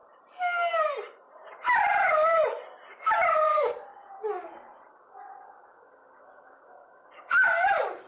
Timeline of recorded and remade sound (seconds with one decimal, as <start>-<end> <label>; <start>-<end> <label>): 0.0-3.5 remade; 3.5-8.1 recorded